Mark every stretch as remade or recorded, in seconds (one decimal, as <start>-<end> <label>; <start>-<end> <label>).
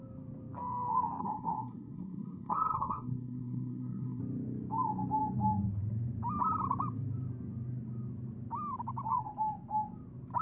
0.0-1.2 recorded; 1.2-4.2 remade; 4.2-10.4 recorded